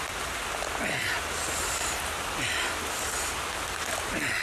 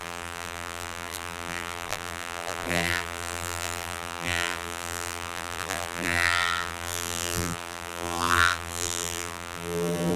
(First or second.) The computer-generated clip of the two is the second